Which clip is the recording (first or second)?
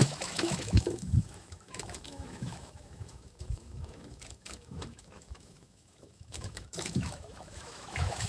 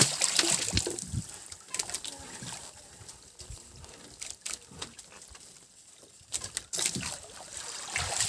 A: second